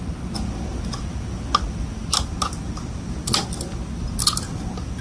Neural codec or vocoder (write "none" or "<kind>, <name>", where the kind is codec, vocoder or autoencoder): none